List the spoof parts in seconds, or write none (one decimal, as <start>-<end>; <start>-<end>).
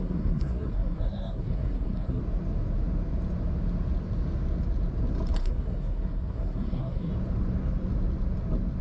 0.0-2.2; 5.4-7.1